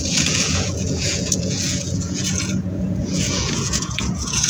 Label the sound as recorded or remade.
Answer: remade